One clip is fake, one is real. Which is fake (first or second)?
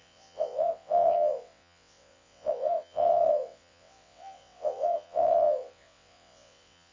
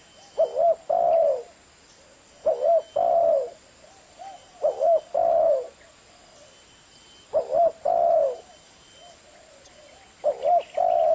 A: first